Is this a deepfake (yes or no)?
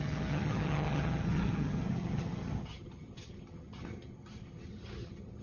yes